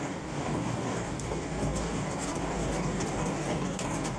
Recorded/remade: remade